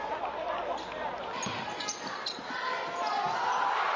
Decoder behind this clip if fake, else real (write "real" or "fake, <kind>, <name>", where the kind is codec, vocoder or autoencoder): real